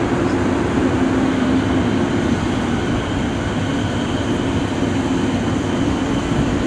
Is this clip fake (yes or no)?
no